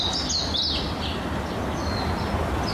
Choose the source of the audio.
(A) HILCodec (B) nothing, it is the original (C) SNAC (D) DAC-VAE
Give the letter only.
B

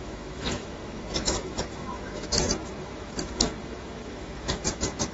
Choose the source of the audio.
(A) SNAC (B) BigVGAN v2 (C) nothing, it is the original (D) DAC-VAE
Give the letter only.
D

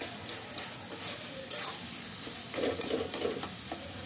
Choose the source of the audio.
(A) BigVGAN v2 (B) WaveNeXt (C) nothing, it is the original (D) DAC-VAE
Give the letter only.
C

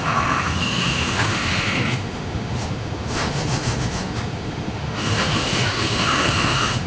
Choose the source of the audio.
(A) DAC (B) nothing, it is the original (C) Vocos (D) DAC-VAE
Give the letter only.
D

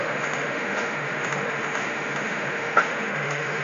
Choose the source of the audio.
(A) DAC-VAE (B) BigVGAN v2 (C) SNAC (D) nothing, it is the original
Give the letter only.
A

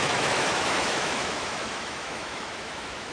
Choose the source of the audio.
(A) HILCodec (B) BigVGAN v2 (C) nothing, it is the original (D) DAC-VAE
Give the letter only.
D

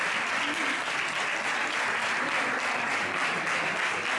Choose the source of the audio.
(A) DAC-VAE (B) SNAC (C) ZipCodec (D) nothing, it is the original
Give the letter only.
D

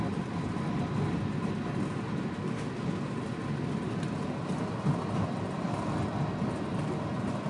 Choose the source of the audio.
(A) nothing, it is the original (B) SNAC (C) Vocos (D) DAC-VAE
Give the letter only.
A